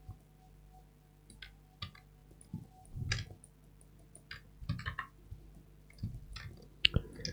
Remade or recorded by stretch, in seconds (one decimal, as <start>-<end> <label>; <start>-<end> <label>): 0.0-7.3 recorded